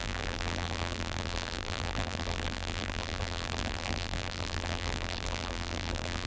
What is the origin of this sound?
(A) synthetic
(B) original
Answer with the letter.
A